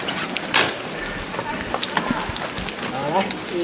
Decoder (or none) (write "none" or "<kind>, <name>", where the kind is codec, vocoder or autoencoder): none